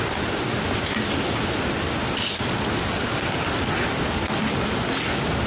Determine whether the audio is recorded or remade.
recorded